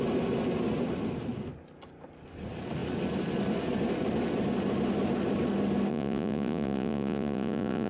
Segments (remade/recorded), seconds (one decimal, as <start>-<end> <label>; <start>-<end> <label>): 0.0-5.9 recorded; 5.9-7.9 remade